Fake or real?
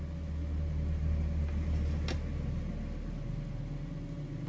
real